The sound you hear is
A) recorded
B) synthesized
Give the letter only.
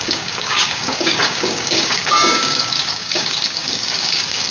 B